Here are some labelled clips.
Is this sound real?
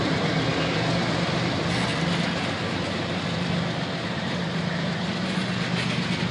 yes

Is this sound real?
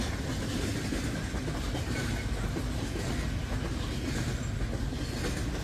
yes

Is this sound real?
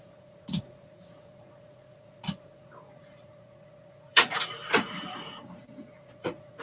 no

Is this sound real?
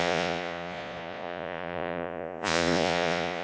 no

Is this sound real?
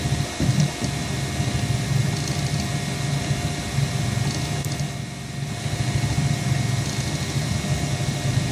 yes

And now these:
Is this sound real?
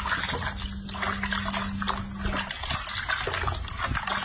yes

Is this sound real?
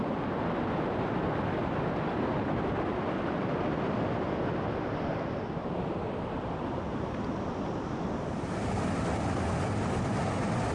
yes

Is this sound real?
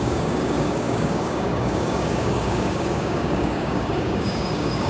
no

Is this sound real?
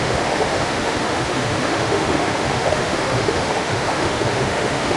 no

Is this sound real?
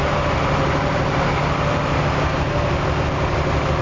yes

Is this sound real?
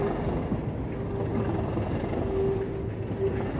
yes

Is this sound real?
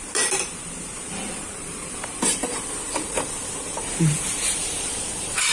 no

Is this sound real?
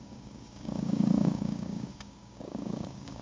no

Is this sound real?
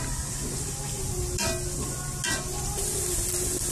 yes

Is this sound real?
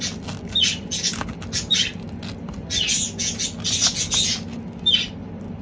yes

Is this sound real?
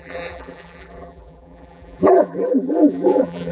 no